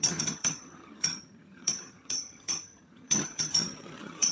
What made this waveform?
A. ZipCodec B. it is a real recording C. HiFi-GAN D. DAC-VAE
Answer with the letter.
C